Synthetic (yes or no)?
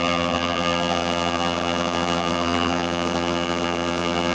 yes